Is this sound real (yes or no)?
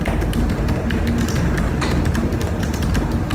yes